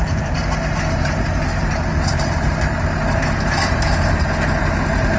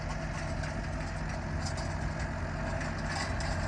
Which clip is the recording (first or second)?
second